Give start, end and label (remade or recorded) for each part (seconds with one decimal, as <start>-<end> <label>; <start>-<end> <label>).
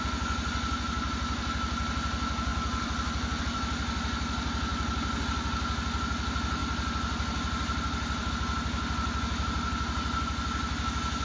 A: 0.0-11.2 recorded